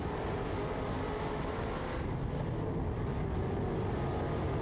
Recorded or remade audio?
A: recorded